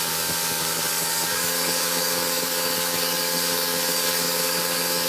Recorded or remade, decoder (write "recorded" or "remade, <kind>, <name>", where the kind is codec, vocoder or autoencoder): remade, codec, DAC